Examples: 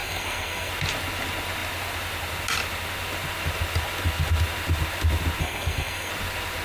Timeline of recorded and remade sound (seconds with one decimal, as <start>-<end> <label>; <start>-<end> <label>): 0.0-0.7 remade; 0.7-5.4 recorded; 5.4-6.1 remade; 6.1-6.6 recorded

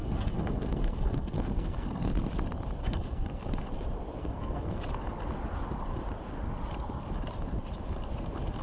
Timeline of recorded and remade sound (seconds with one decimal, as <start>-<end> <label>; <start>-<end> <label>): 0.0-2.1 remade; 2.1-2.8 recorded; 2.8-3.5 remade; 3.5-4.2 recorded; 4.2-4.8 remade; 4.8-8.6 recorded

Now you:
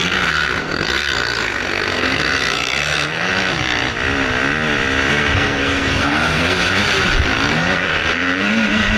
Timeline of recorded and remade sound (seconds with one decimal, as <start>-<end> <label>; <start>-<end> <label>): 0.0-3.3 remade; 3.3-5.1 recorded; 5.1-6.8 remade; 6.8-7.5 recorded; 7.5-9.0 remade

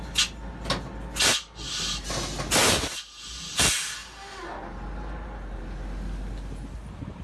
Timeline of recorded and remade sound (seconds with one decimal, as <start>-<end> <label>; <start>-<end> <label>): 0.0-7.2 recorded

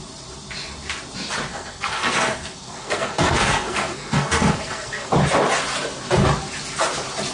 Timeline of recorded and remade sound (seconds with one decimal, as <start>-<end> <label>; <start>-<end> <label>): 0.0-1.5 recorded; 1.5-5.1 remade; 5.1-7.3 recorded